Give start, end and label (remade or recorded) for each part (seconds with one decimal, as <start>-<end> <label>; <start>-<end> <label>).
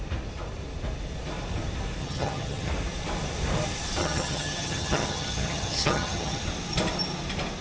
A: 0.0-2.0 recorded; 2.0-2.7 remade; 2.7-4.0 recorded; 4.0-6.4 remade; 6.4-7.6 recorded